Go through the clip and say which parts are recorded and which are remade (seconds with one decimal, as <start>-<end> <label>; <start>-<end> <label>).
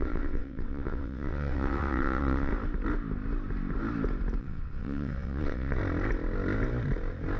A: 0.0-2.5 remade; 2.5-4.4 recorded; 4.4-5.8 remade; 5.8-7.4 recorded